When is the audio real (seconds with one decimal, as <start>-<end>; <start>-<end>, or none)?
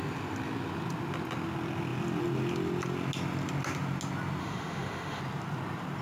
0.0-4.4; 5.2-6.0